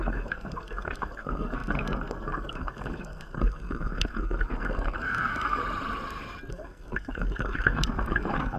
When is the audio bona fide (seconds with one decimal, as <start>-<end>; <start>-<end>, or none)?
5.6-6.5